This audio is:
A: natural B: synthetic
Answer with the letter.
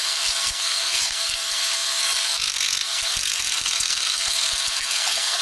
B